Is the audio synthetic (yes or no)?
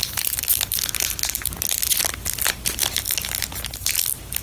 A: no